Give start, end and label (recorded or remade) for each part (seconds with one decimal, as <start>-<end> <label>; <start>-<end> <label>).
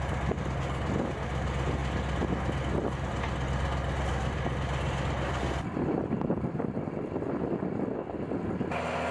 0.0-9.1 recorded